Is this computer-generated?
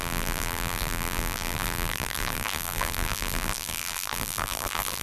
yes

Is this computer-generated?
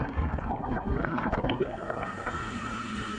yes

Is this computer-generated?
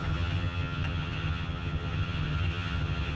yes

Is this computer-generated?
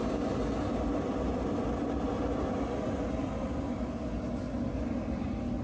no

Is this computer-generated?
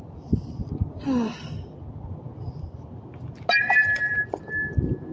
no